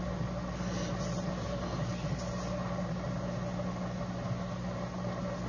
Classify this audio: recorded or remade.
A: recorded